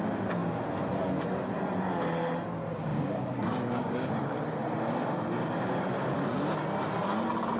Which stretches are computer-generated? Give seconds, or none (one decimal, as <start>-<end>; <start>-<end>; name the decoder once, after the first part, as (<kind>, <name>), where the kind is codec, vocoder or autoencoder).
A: 2.9-4.1 (codec, DAC)